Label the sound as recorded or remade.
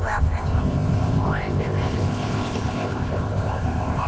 remade